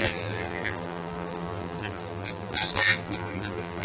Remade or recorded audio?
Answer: remade